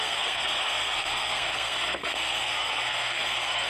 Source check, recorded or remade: remade